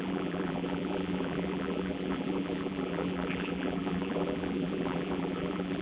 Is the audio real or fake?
fake